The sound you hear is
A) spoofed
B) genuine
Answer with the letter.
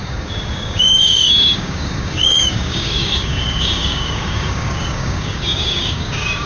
A